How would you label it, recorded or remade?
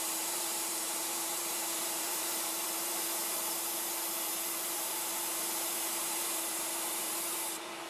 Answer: remade